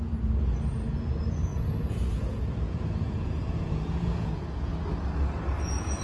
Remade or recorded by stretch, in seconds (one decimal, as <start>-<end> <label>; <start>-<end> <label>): 0.0-4.7 remade; 4.7-5.6 recorded; 5.6-6.0 remade